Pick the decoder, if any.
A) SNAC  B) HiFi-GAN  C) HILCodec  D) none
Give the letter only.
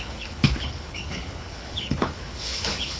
C